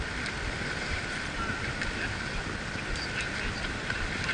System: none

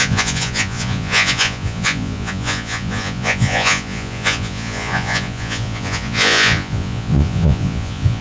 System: vocoder, Vocos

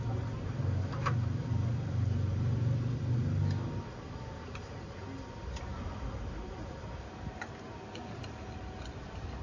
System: none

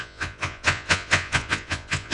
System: vocoder, Vocos